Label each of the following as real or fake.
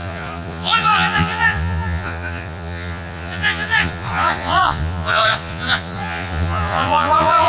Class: fake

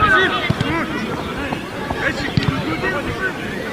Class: real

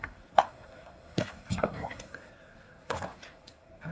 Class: fake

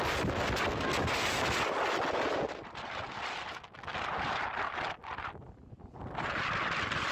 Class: real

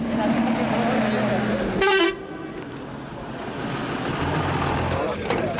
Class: real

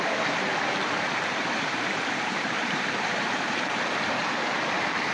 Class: fake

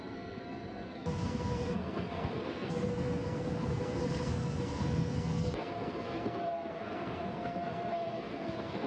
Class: fake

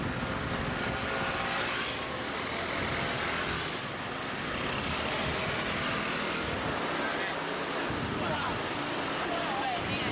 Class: real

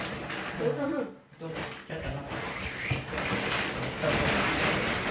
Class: real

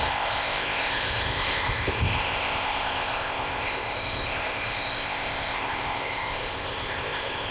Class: fake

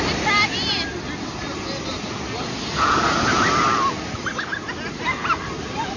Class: real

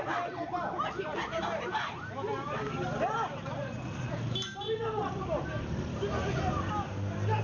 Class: real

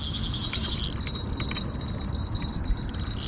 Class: real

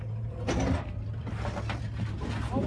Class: real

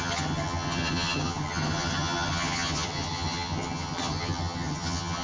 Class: fake